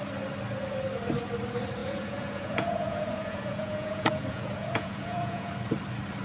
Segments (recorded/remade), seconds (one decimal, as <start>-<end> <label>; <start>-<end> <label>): 0.0-1.8 recorded; 1.8-5.5 remade; 5.5-6.2 recorded

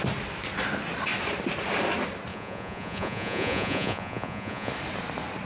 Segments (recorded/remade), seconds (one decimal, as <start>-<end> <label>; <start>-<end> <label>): 0.0-2.3 recorded; 2.3-4.7 remade; 4.7-5.4 recorded

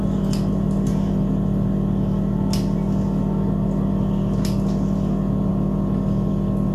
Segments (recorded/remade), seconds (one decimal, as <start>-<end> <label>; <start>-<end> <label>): 0.0-6.7 recorded

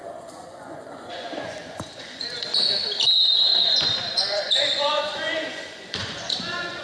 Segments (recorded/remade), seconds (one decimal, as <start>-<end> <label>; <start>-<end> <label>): 0.0-2.7 remade; 2.7-3.5 recorded; 3.5-6.8 remade

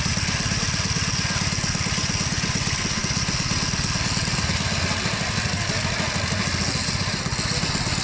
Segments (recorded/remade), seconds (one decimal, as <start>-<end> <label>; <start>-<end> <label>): 0.0-8.0 recorded